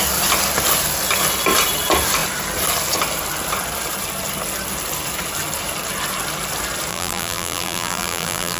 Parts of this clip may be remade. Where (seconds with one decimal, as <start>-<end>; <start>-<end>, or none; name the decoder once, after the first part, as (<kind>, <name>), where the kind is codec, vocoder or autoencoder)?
6.9-8.6 (vocoder, BigVGAN v2)